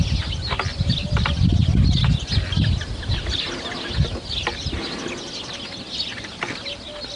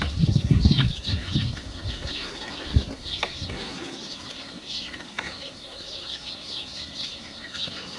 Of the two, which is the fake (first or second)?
second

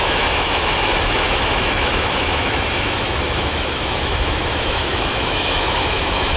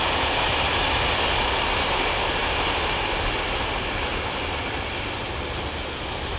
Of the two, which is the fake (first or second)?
first